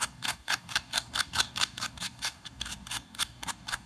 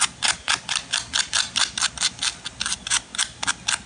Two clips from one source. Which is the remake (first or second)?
first